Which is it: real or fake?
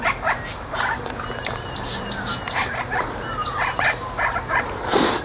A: fake